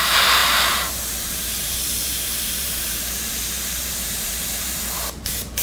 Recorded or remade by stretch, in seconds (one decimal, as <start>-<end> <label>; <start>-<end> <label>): 0.0-5.6 remade